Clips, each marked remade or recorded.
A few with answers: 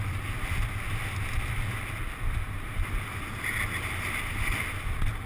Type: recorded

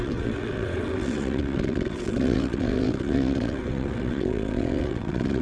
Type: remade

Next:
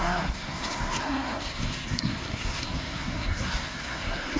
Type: remade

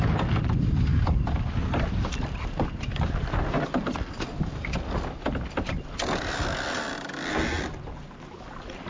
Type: recorded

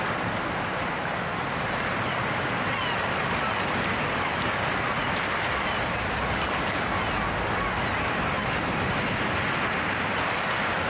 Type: recorded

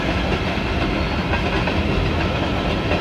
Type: recorded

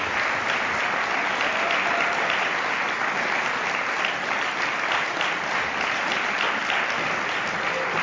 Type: recorded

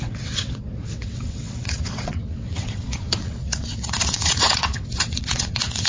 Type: remade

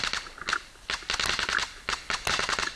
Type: recorded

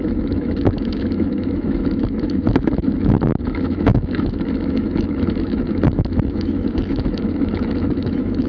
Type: remade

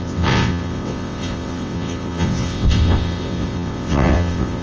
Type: remade